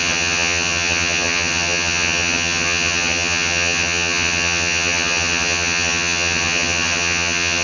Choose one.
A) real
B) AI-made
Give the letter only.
B